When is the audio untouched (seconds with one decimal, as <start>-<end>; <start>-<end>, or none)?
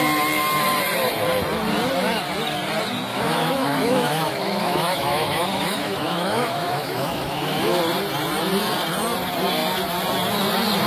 0.0-3.1; 7.8-10.9